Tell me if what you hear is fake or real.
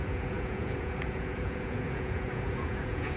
fake